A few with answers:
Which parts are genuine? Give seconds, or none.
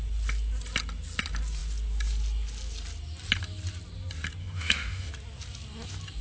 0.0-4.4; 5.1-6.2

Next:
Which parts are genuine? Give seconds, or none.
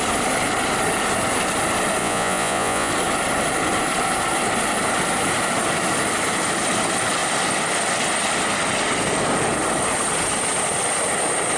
0.0-2.0; 2.9-11.6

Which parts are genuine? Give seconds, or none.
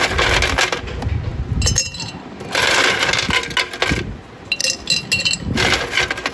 0.0-6.3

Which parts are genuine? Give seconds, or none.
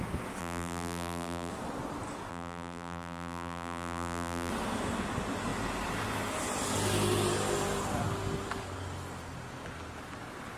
0.0-0.4; 1.5-2.3; 4.5-10.6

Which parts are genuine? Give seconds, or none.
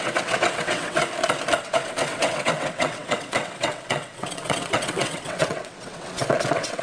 1.0-1.6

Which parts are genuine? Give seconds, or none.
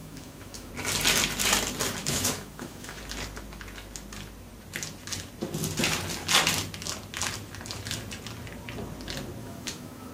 0.7-2.0; 3.0-9.4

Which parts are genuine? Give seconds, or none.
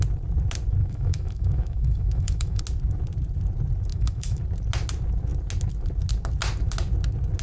0.0-0.8; 2.6-3.9; 4.4-7.4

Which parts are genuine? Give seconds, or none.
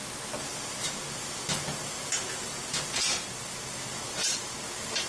0.0-5.1